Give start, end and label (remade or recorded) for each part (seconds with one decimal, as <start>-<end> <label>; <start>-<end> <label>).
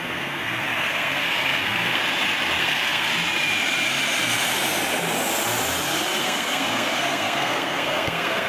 0.0-2.0 remade; 2.0-2.6 recorded; 2.6-3.1 remade; 3.1-6.2 recorded; 6.2-8.5 remade